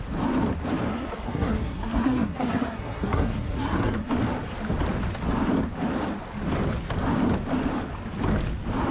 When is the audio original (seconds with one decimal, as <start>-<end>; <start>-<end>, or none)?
0.0-0.9; 4.1-8.9

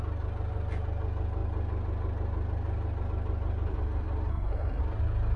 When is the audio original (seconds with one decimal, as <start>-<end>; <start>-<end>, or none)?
0.0-4.3; 4.8-5.4

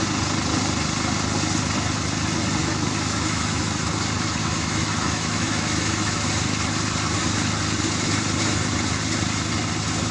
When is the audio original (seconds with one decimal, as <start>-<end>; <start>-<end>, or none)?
0.0-2.6; 3.9-4.4; 6.3-10.1

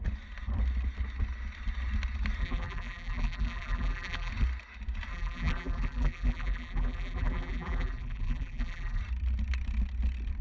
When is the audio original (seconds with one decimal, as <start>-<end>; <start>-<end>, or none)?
0.0-2.4; 4.3-5.1; 9.0-10.4

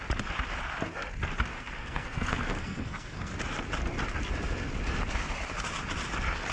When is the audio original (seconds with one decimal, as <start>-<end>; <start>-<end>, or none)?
0.0-1.5; 3.3-6.5

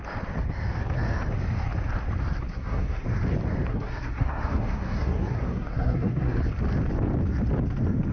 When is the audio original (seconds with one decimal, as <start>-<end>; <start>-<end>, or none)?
0.0-2.5; 3.0-3.7; 6.4-8.1

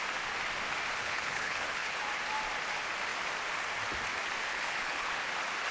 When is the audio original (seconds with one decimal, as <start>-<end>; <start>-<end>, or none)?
0.0-1.0; 2.0-4.5; 5.1-5.7